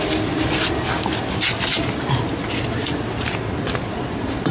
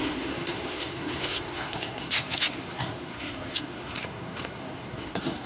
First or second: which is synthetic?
second